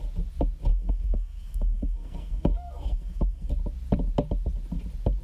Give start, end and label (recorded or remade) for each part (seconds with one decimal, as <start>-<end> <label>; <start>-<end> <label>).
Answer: 0.0-0.7 recorded; 0.7-3.5 remade; 3.5-5.2 recorded